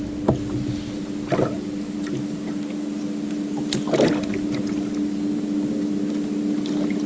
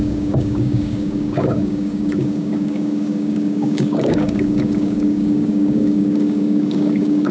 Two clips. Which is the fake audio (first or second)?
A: second